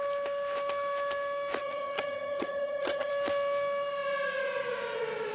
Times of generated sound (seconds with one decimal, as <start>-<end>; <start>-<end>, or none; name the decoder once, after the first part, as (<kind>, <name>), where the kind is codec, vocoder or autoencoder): 1.6-3.1 (vocoder, HiFi-GAN)